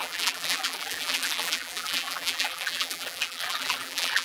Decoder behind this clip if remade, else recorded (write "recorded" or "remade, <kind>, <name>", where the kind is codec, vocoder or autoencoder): remade, vocoder, BigVGAN v2